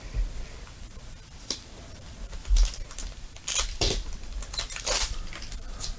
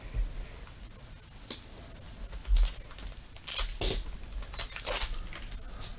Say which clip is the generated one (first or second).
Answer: first